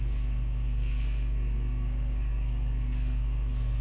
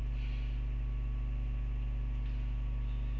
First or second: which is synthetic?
first